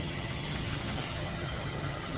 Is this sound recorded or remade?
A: remade